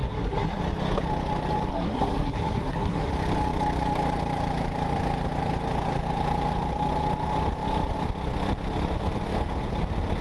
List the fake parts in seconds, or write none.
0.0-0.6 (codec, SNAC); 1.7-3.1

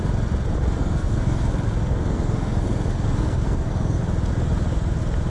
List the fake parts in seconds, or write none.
0.8-4.0 (codec, SNAC)

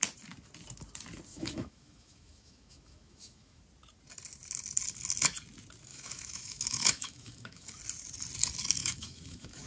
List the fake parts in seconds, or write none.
1.3-3.6 (autoencoder, DAC-VAE); 5.9-7.8; 8.8-9.7

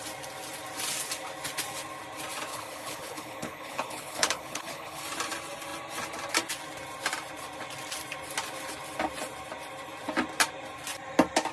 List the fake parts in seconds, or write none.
2.5-5.0 (codec, HILCodec)

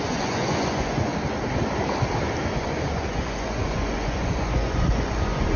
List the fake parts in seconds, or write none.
0.0-1.1 (vocoder, Vocos); 2.5-5.6

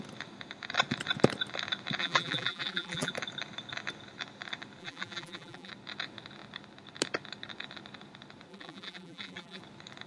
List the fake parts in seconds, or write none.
2.0-3.1 (vocoder, BigVGAN v2); 4.8-5.7; 8.5-9.6

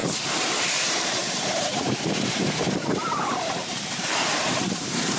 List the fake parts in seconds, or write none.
0.5-5.2 (vocoder, BigVGAN v2)